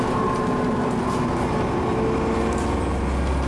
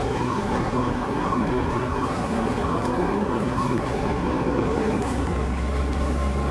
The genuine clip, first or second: first